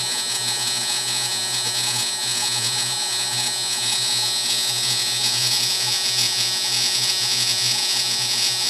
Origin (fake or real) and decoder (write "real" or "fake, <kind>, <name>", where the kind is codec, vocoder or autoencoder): fake, vocoder, Vocos